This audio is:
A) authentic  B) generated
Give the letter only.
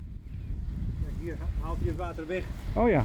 A